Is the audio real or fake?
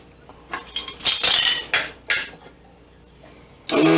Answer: real